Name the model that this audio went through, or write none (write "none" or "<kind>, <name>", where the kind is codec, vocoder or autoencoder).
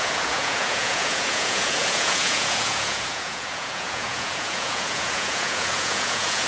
vocoder, Vocos